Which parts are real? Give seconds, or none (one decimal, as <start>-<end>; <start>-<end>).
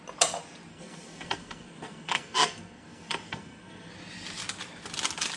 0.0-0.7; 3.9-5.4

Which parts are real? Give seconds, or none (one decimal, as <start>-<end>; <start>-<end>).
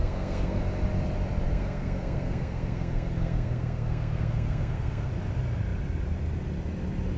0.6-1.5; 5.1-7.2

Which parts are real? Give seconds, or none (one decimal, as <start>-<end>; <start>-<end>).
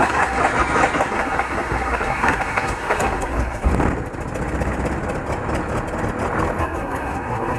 0.4-1.0; 3.7-6.6